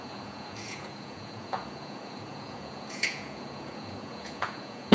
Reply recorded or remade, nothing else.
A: remade